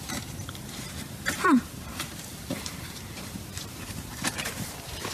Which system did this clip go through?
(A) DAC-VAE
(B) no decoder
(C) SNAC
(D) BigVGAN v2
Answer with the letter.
D